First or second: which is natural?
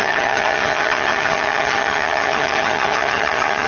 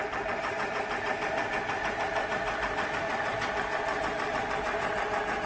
second